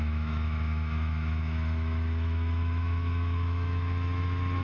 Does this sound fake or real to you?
fake